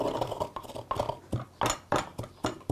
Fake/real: real